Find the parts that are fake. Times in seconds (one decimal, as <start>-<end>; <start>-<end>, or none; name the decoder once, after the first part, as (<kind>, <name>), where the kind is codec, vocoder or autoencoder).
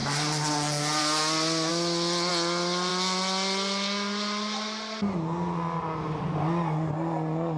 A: none